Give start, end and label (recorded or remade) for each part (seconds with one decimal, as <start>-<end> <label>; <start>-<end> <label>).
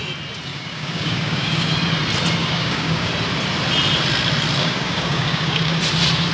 0.0-0.5 recorded; 0.5-1.7 remade; 1.7-2.4 recorded; 2.4-3.1 remade; 3.1-4.6 recorded; 4.6-5.8 remade; 5.8-6.3 recorded